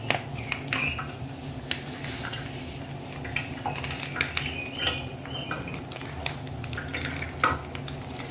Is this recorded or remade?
recorded